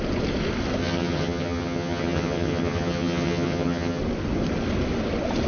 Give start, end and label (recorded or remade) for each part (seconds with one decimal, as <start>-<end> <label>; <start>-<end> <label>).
0.0-0.8 recorded; 0.8-4.0 remade; 4.0-5.5 recorded